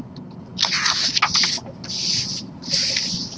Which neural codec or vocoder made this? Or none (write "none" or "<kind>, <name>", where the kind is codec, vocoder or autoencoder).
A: none